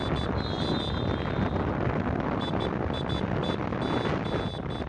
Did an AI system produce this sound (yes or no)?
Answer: no